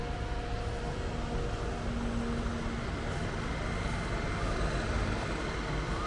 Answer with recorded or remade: recorded